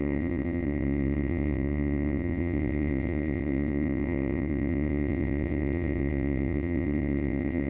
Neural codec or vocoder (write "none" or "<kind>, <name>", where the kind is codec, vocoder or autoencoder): vocoder, WaveNeXt